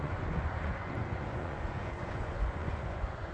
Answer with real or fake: fake